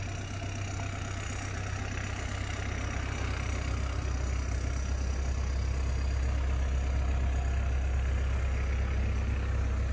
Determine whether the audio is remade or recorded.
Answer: recorded